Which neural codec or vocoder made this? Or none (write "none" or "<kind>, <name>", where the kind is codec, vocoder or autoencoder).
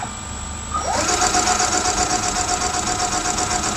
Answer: none